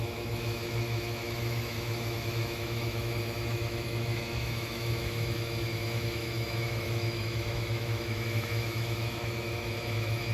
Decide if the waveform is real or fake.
fake